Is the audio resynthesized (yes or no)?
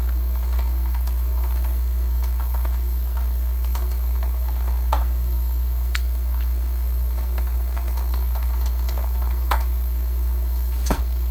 yes